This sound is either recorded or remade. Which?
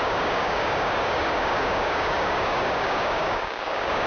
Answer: remade